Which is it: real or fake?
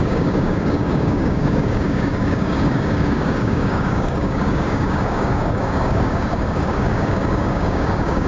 fake